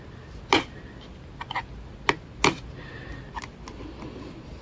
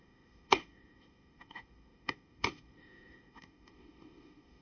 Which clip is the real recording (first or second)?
first